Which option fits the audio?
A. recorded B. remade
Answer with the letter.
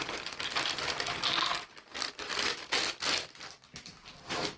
A